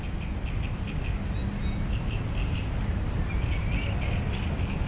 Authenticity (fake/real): real